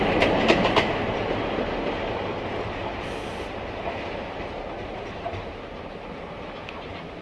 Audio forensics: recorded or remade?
recorded